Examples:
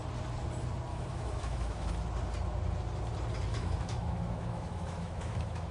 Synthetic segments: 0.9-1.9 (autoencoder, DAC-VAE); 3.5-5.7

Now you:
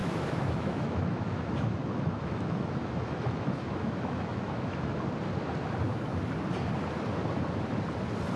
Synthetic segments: 0.0-5.0 (autoencoder, DAC-VAE)

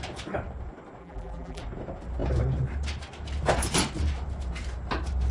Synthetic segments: 1.0-1.6 (vocoder, BigVGAN v2)

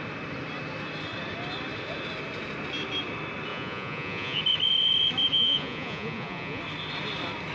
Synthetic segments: 3.5-4.4 (vocoder, Vocos); 5.3-6.6

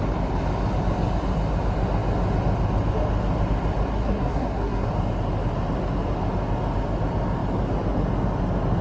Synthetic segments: 3.9-4.9 (codec, SNAC)

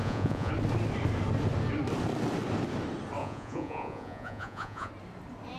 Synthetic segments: 0.0-0.5 (vocoder, Vocos); 3.2-4.9